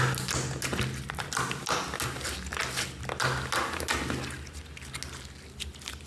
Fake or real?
real